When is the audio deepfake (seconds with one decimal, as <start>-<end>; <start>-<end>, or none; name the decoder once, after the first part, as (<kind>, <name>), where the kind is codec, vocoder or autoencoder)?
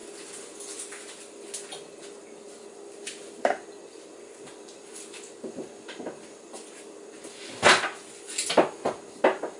none